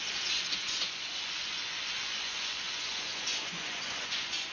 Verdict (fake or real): fake